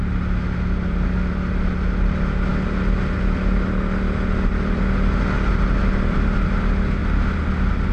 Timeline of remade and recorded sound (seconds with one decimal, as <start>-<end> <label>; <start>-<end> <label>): 0.0-7.9 recorded